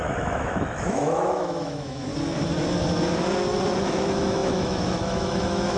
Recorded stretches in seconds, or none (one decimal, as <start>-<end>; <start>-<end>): 2.1-3.8